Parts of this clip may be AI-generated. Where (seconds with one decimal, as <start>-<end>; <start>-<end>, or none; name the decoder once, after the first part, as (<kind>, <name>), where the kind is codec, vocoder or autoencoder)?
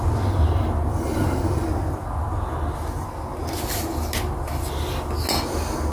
0.9-1.7 (vocoder, BigVGAN v2)